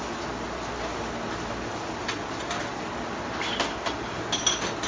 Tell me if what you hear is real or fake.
real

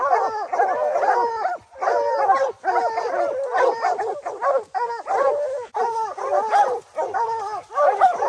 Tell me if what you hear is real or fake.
real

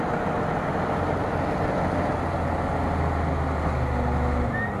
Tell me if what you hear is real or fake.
real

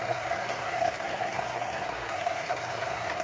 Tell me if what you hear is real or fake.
fake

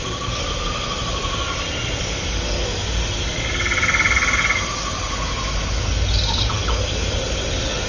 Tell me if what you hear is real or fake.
real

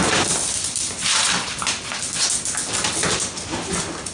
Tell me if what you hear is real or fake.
real